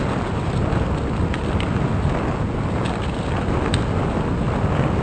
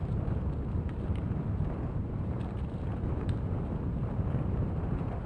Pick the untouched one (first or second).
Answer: first